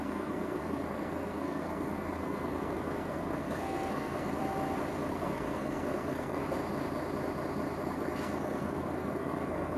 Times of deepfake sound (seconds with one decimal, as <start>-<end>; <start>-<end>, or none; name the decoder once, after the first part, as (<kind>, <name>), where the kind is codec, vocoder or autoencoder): 0.0-4.4 (codec, SNAC); 5.1-6.4; 7.8-9.8